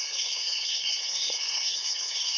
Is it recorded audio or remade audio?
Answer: remade